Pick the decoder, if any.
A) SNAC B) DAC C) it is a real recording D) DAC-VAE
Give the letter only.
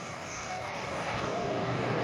B